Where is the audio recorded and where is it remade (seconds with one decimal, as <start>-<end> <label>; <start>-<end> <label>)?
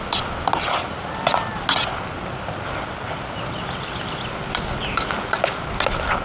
0.0-6.2 recorded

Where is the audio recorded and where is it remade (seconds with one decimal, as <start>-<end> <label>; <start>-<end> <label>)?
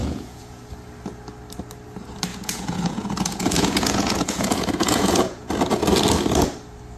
0.0-0.6 remade; 0.6-2.3 recorded; 2.3-5.5 remade; 5.5-7.0 recorded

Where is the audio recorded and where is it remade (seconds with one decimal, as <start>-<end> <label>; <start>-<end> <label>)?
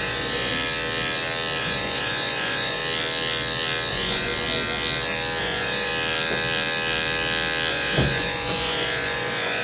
0.0-0.5 remade; 0.5-1.6 recorded; 1.6-2.8 remade; 2.8-3.9 recorded; 3.9-4.3 remade; 4.3-5.4 recorded; 5.4-5.9 remade; 5.9-7.7 recorded; 7.7-9.6 remade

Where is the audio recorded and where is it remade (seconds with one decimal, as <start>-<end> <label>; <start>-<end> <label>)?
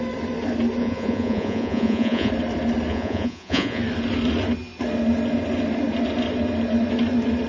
0.0-0.8 recorded; 0.8-2.3 remade; 2.3-2.9 recorded; 2.9-3.8 remade; 3.8-7.5 recorded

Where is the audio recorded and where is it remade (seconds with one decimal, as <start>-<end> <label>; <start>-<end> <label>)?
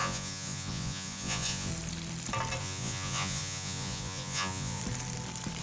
0.0-1.7 remade; 1.7-2.6 recorded; 2.6-4.8 remade; 4.8-5.6 recorded